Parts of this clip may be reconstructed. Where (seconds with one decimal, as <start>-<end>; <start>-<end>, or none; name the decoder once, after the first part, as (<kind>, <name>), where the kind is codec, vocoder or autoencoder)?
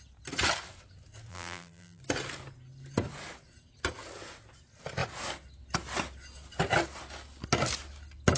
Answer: 1.3-2.0 (vocoder, BigVGAN v2)